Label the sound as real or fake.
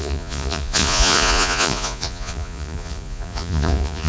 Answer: fake